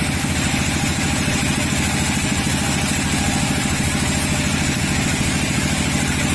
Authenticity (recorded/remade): recorded